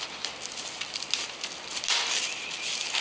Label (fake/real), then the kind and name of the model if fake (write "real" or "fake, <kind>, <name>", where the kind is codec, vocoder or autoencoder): real